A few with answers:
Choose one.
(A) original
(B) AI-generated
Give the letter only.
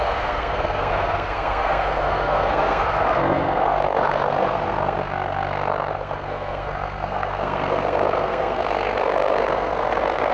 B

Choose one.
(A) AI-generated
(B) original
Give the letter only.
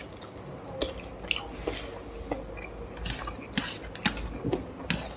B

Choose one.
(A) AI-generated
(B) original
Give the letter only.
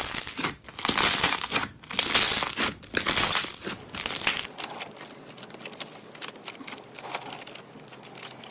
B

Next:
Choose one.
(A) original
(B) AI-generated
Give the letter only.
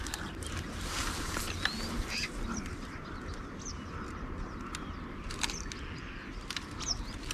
A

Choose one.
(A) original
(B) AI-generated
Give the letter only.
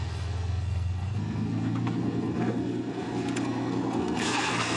B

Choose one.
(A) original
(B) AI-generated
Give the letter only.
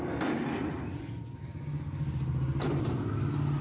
A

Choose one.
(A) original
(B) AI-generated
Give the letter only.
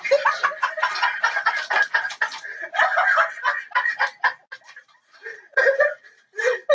A